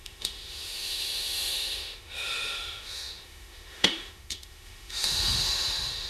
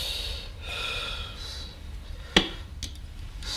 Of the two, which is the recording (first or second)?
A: second